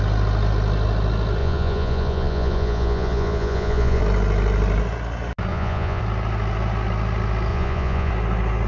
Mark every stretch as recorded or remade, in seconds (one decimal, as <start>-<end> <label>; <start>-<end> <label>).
0.0-1.4 recorded; 1.4-4.0 remade; 4.0-5.5 recorded; 5.5-6.0 remade; 6.0-7.5 recorded; 7.5-8.1 remade; 8.1-8.7 recorded